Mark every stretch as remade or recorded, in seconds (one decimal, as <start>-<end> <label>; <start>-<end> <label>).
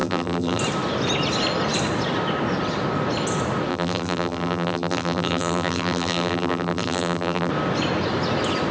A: 0.0-0.6 remade; 0.6-3.7 recorded; 3.7-7.5 remade; 7.5-8.7 recorded